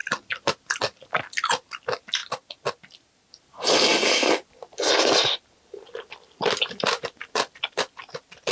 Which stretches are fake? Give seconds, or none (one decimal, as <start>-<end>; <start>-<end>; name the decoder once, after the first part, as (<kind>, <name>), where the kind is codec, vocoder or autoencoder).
0.0-0.8 (vocoder, BigVGAN v2); 3.9-7.8